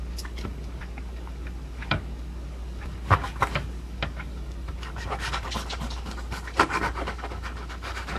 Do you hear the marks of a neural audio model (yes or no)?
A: yes